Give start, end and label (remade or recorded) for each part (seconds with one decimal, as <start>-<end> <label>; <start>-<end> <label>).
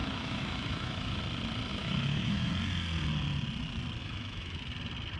0.0-1.2 remade; 1.2-1.7 recorded; 1.7-2.5 remade; 2.5-4.0 recorded; 4.0-4.6 remade; 4.6-5.2 recorded